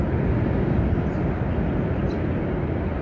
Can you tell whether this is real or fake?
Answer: real